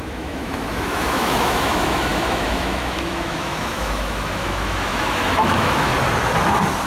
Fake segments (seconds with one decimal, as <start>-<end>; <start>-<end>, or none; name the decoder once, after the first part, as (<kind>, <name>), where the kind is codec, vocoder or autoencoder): 0.0-5.9 (autoencoder, DAC-VAE)